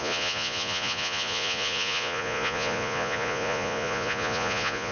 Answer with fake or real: fake